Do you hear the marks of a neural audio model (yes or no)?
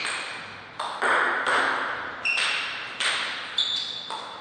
no